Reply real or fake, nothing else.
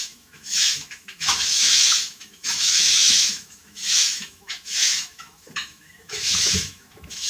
fake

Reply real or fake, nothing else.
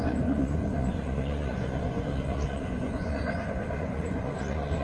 fake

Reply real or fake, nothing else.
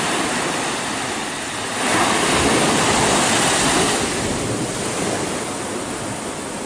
real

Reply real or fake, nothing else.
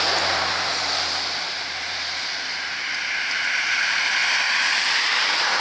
fake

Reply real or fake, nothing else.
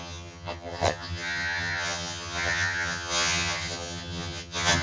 fake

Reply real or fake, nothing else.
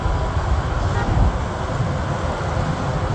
real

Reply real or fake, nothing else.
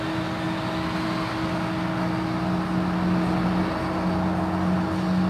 real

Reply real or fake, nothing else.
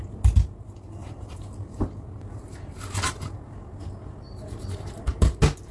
real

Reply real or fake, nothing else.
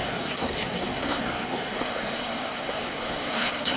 fake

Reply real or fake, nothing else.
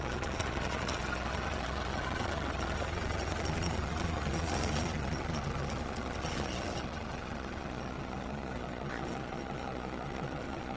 fake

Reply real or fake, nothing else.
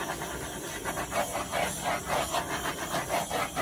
real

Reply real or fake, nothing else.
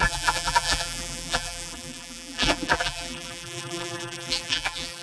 fake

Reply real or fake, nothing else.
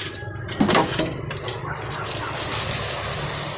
real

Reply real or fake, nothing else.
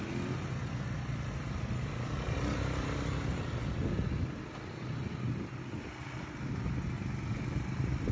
real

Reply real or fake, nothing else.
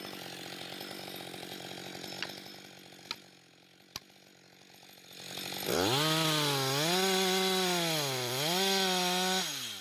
real